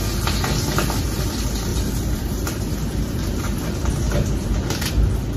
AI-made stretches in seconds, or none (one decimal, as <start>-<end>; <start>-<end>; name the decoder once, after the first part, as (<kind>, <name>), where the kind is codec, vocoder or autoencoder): 1.7-4.9 (vocoder, BigVGAN v2)